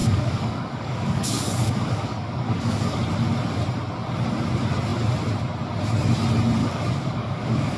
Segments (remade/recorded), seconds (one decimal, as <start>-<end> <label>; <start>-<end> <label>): 0.0-3.0 remade; 3.0-6.6 recorded; 6.6-7.8 remade